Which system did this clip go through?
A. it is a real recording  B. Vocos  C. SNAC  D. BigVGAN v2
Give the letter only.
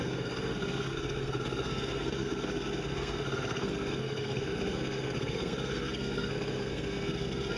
C